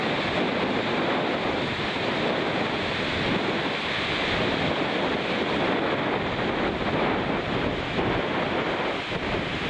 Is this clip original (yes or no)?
yes